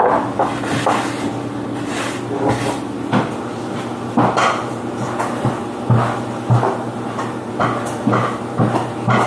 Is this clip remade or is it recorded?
recorded